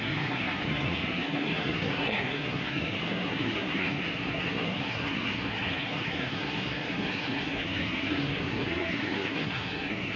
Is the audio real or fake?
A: fake